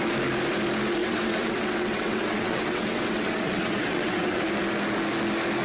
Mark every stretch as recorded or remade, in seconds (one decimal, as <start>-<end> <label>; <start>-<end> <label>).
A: 0.0-1.0 recorded; 1.0-4.4 remade; 4.4-5.6 recorded